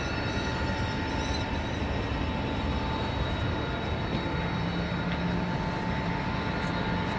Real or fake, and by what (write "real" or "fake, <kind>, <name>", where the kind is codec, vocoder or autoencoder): real